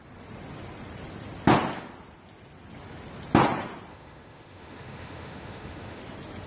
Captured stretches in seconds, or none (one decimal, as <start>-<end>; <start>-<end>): 0.0-3.9; 6.0-6.5